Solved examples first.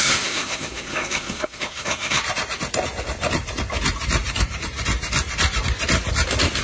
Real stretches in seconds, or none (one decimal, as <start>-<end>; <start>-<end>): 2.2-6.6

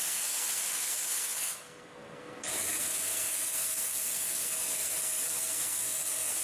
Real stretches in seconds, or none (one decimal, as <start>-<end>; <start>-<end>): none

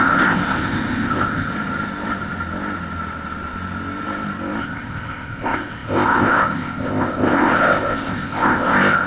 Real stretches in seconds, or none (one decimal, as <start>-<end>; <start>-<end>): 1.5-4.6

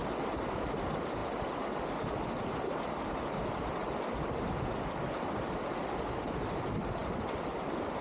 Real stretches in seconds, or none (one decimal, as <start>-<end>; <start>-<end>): 0.0-8.0